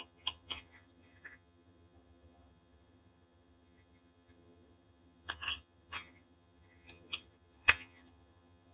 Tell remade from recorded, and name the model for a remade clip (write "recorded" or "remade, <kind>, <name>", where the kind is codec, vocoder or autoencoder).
remade, vocoder, HiFi-GAN